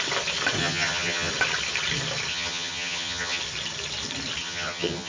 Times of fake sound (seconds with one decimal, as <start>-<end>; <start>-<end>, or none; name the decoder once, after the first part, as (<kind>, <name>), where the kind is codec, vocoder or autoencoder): 0.6-1.3 (vocoder, HiFi-GAN); 2.3-3.4; 4.4-5.1